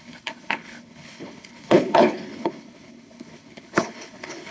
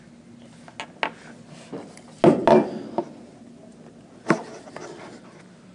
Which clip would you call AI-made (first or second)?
first